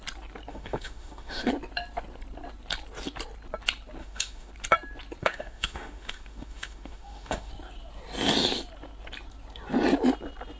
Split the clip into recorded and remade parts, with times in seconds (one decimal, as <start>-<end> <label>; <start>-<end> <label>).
0.0-0.5 recorded; 0.5-1.5 remade; 1.5-4.0 recorded; 4.0-4.5 remade; 4.5-5.2 recorded; 5.2-7.5 remade; 7.5-10.6 recorded